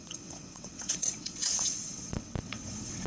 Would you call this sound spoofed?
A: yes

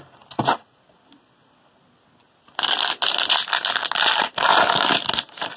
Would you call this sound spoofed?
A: no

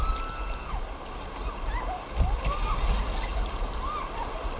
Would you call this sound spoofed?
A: no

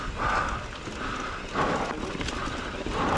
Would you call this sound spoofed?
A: no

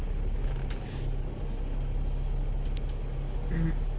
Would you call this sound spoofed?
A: no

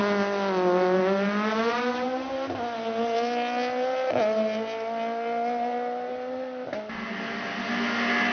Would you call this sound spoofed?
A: no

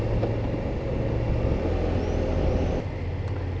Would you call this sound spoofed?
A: no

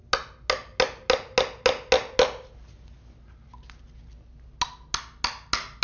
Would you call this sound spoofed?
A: no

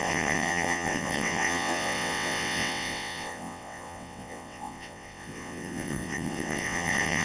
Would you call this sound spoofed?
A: yes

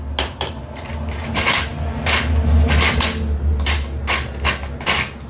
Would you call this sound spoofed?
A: no